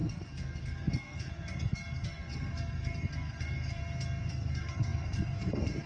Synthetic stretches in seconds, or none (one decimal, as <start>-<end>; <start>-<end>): 0.0-3.8; 4.3-5.9